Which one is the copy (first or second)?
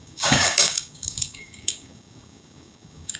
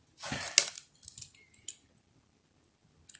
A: first